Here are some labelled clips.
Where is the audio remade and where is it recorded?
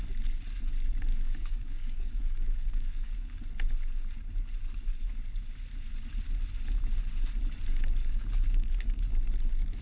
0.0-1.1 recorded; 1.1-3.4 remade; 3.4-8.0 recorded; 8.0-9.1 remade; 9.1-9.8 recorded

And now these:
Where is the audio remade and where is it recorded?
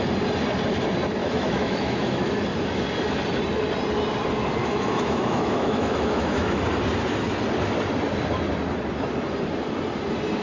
0.0-1.2 recorded; 1.2-2.3 remade; 2.3-4.6 recorded; 4.6-6.6 remade; 6.6-10.4 recorded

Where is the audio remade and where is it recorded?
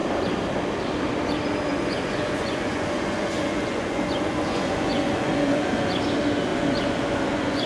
0.0-1.7 recorded; 1.7-6.0 remade; 6.0-6.5 recorded; 6.5-7.7 remade